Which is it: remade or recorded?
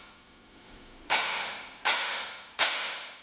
remade